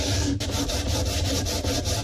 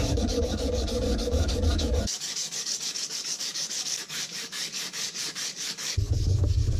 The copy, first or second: second